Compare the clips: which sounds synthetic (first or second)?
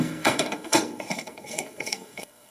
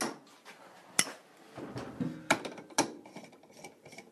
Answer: first